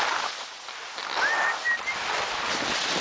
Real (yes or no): yes